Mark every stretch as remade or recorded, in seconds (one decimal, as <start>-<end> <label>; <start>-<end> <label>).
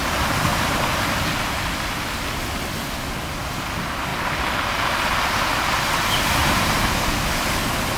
0.0-6.4 recorded; 6.4-7.2 remade; 7.2-8.0 recorded